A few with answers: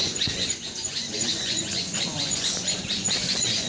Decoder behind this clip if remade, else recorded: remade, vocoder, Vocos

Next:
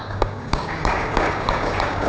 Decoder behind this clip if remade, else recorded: remade, codec, DAC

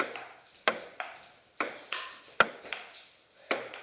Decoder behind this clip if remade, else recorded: recorded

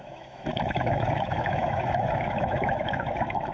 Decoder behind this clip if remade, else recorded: remade, autoencoder, DAC-VAE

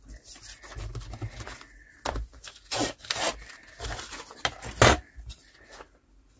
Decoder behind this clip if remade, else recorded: recorded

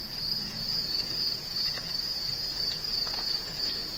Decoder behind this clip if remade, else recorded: remade, vocoder, Vocos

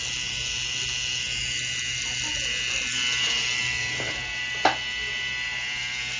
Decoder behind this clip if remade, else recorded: recorded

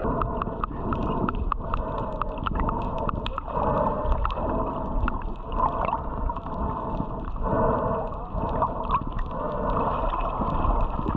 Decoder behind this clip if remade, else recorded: recorded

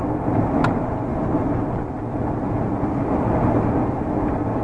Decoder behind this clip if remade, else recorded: recorded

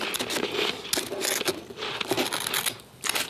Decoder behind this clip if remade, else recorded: recorded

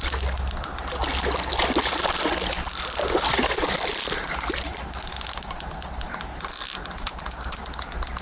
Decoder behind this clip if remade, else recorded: recorded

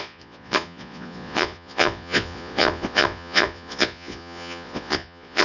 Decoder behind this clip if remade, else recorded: remade, vocoder, Vocos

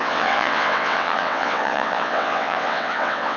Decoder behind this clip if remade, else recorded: remade, vocoder, WaveNeXt